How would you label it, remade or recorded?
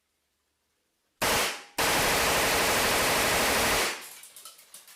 recorded